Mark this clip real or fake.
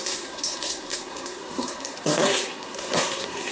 fake